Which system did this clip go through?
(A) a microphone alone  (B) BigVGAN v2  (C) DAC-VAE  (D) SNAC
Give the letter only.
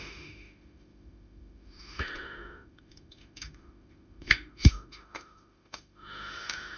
C